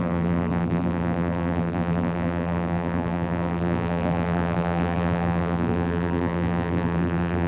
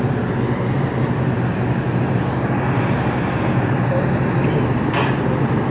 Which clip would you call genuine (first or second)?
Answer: second